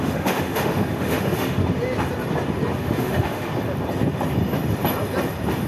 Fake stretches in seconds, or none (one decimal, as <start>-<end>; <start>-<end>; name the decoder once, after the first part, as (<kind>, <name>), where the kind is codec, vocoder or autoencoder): 0.0-1.6 (autoencoder, DAC-VAE); 2.8-3.5